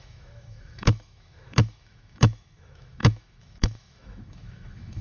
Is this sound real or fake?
fake